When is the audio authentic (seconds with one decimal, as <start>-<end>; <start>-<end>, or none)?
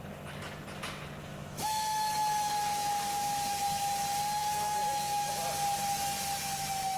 0.0-1.2; 3.9-4.4; 5.3-7.0